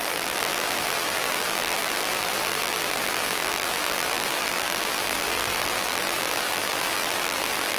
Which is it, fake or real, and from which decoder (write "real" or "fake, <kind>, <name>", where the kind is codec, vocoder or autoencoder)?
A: fake, vocoder, BigVGAN v2